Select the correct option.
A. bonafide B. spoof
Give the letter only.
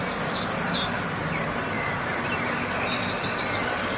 A